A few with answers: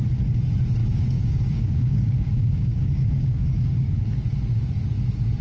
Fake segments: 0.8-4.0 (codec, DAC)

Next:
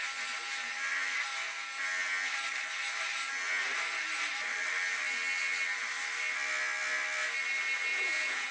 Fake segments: 7.9-8.5 (vocoder, Vocos)

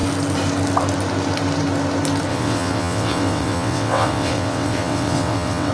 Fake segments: 2.3-5.7 (vocoder, WaveNeXt)